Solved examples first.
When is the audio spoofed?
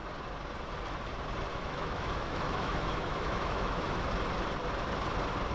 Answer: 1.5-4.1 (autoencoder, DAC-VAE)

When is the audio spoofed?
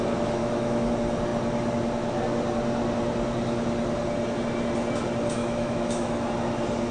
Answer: 0.4-0.9 (autoencoder, DAC-VAE); 5.4-6.3